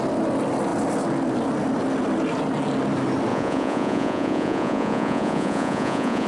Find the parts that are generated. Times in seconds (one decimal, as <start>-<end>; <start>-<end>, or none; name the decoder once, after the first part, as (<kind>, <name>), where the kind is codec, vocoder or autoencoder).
3.3-6.3 (vocoder, Vocos)